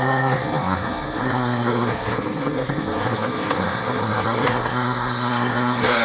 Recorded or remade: remade